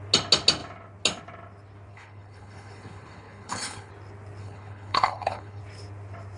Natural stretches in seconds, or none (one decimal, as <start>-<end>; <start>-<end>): 0.0-1.9; 3.9-4.4; 5.6-6.4